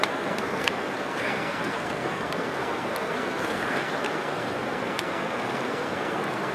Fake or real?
fake